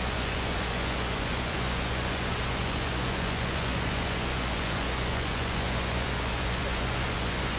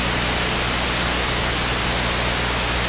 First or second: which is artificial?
first